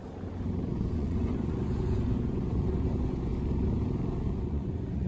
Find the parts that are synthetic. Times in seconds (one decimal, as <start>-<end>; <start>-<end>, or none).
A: 0.7-3.3; 4.3-5.1